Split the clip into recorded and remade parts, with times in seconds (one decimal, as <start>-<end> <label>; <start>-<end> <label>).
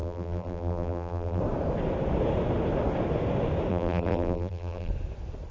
0.0-1.4 remade; 1.4-3.7 recorded; 3.7-4.9 remade; 4.9-5.5 recorded